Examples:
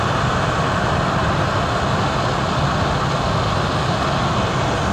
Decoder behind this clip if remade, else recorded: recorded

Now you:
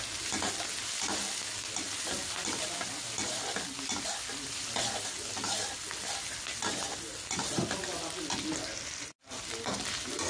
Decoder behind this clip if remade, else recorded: recorded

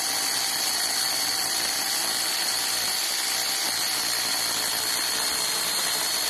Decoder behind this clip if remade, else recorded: recorded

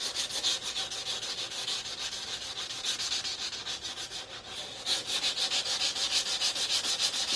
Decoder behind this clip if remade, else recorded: recorded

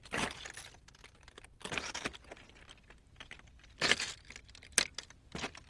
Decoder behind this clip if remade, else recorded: recorded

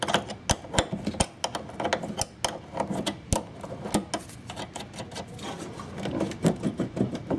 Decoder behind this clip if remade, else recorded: recorded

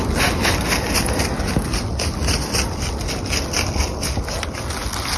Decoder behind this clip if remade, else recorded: recorded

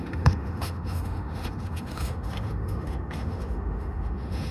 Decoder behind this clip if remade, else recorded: remade, autoencoder, DAC-VAE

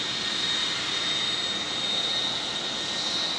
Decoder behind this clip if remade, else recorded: recorded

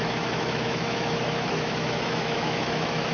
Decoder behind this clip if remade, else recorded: remade, autoencoder, DAC-VAE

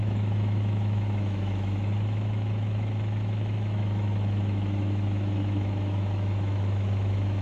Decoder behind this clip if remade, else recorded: remade, autoencoder, DAC-VAE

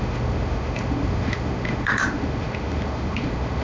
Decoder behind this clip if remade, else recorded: remade, autoencoder, DAC-VAE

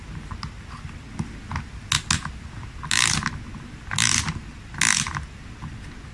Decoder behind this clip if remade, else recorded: recorded